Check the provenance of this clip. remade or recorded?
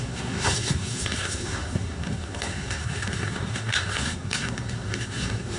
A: remade